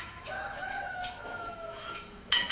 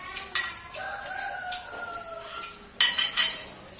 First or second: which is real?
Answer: second